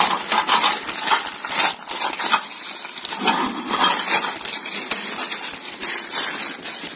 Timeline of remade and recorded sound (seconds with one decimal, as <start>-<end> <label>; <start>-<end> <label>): 0.0-7.0 recorded